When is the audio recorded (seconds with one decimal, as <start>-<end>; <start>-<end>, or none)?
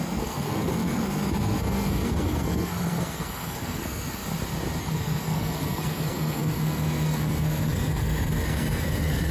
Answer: 4.2-4.8